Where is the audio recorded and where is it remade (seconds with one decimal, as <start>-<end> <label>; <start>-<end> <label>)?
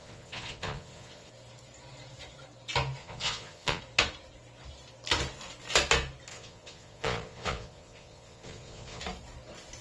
0.0-1.3 remade; 1.3-3.0 recorded; 3.0-3.8 remade; 3.8-6.3 recorded; 6.3-9.0 remade; 9.0-9.8 recorded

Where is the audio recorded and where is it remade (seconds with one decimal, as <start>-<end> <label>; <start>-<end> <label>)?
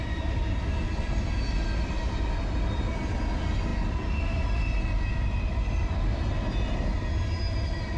0.0-8.0 recorded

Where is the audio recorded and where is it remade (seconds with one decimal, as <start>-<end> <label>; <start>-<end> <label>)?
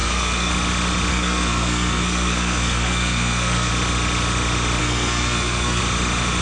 0.0-0.5 remade; 0.5-1.1 recorded; 1.1-3.7 remade; 3.7-4.8 recorded; 4.8-5.8 remade; 5.8-6.4 recorded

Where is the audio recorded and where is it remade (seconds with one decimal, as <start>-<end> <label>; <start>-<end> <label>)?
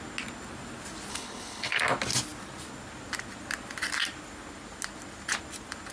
0.0-1.1 recorded; 1.1-1.8 remade; 1.8-5.9 recorded